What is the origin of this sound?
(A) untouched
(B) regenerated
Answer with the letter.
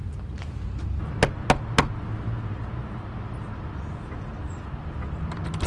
A